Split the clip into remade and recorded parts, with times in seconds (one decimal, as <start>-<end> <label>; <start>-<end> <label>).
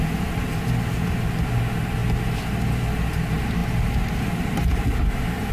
0.0-5.5 recorded